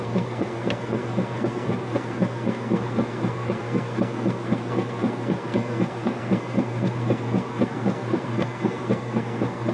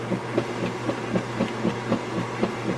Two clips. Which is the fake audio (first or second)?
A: first